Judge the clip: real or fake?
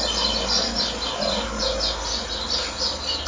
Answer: real